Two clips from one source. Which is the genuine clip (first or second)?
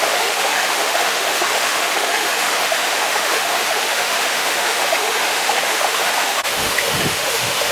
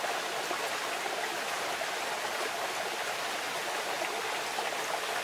second